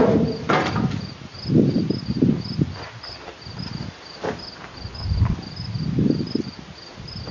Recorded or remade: recorded